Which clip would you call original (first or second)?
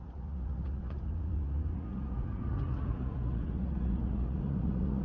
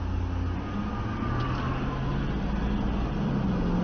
second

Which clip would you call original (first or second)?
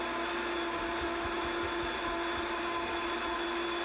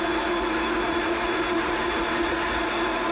first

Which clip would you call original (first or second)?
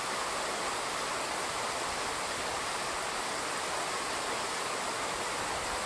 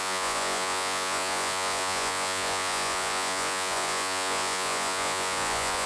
first